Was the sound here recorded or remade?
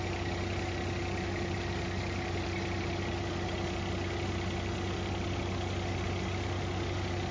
recorded